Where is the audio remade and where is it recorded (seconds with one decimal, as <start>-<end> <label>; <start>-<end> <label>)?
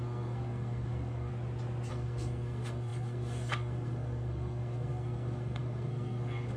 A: 0.0-1.3 remade; 1.3-1.9 recorded; 1.9-6.6 remade